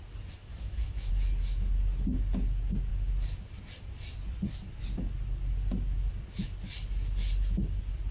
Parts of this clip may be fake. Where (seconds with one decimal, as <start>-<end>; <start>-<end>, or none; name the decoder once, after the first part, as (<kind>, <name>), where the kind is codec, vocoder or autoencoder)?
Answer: 0.5-1.1 (autoencoder, DAC-VAE)